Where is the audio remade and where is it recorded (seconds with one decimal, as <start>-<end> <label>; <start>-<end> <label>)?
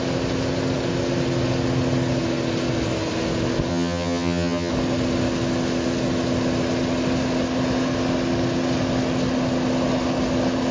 0.0-3.7 recorded; 3.7-4.7 remade; 4.7-10.7 recorded